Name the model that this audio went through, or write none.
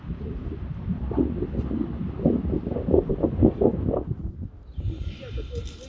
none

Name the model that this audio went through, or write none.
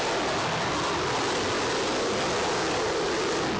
none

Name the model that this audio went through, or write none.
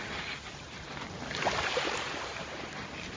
none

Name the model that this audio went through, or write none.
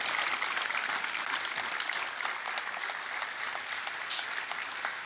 none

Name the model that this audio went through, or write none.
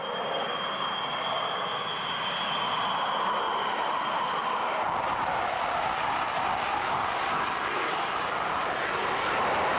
none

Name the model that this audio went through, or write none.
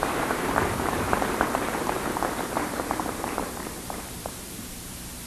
vocoder, BigVGAN v2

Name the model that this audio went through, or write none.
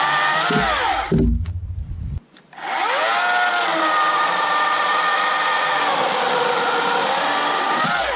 none